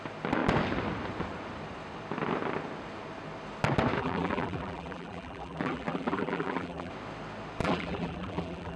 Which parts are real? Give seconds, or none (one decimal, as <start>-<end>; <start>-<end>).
0.0-4.0; 6.9-7.6